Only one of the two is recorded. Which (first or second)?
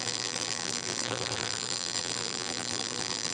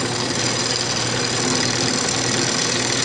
second